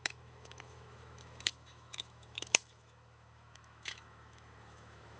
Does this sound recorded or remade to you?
remade